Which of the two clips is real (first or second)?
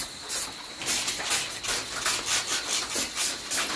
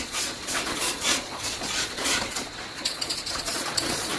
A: first